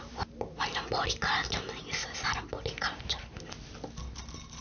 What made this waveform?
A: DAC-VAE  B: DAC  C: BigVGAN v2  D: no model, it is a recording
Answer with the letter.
D